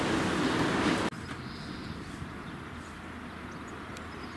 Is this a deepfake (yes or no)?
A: no